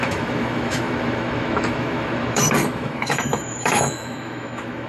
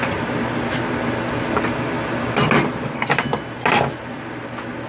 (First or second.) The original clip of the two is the second